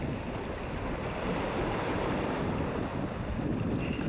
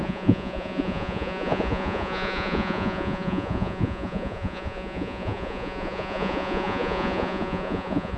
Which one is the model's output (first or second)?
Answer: second